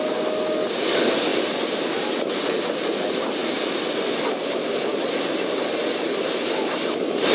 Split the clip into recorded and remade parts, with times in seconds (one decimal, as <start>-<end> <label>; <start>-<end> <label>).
0.0-7.3 recorded